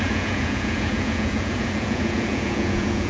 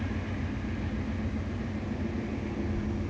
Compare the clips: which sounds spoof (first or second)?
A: first